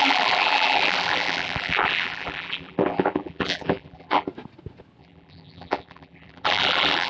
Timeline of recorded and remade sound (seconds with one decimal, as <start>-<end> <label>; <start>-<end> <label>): 0.0-4.3 remade; 4.3-5.0 recorded; 5.0-7.1 remade